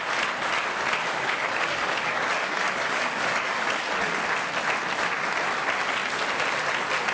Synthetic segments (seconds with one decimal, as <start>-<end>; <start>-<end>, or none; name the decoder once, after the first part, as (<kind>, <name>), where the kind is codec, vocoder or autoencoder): 1.0-4.2 (codec, DAC)